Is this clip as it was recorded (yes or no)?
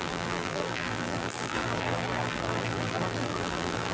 no